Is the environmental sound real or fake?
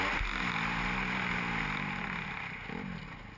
real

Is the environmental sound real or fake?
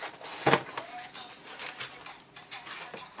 real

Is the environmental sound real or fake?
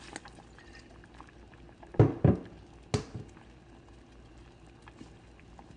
real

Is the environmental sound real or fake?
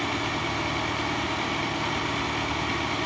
real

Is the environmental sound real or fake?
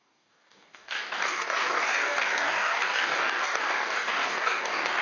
fake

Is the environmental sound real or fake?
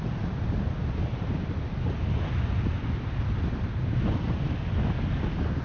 real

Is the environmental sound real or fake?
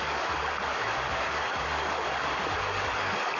fake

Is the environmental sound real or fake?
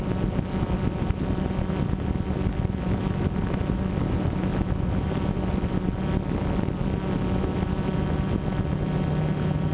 real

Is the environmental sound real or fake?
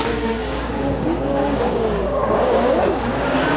fake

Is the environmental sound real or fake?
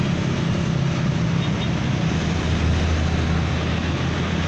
real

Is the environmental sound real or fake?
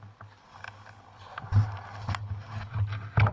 real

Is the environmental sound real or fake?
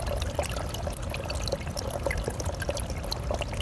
real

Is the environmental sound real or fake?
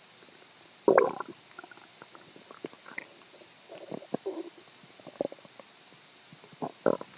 real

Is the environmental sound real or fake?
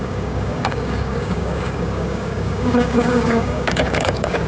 fake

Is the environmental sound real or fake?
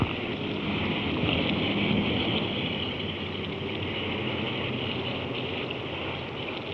real